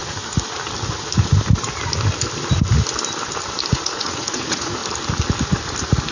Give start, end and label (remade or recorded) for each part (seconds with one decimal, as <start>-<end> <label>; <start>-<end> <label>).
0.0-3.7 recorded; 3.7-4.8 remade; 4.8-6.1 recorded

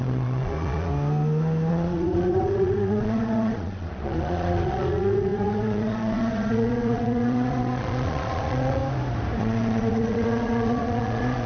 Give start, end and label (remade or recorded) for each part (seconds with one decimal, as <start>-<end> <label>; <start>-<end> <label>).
0.0-0.9 remade; 0.9-1.7 recorded; 1.7-8.8 remade; 8.8-9.4 recorded; 9.4-11.5 remade

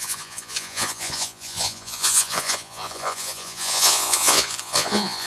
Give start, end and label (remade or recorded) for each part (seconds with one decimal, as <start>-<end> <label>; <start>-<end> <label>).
0.0-5.3 remade

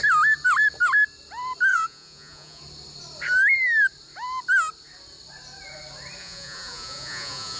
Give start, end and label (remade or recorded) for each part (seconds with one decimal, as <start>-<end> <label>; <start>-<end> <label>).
0.0-1.7 recorded; 1.7-2.6 remade; 2.6-6.2 recorded; 6.2-7.6 remade

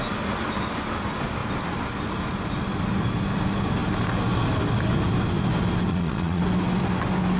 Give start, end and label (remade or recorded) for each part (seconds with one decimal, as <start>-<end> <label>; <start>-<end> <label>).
0.0-5.9 recorded; 5.9-6.4 remade; 6.4-7.4 recorded

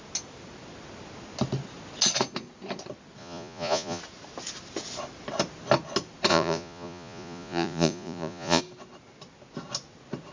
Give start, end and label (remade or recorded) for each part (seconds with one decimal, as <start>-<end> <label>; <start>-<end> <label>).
0.0-3.2 recorded; 3.2-4.0 remade; 4.0-6.3 recorded; 6.3-8.6 remade; 8.6-10.3 recorded

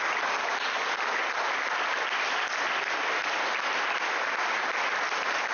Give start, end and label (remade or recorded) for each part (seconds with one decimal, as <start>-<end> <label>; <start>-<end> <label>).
0.0-5.5 recorded

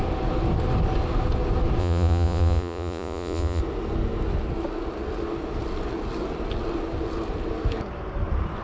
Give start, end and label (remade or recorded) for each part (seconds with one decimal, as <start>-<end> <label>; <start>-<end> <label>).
0.0-1.8 recorded; 1.8-3.6 remade; 3.6-8.6 recorded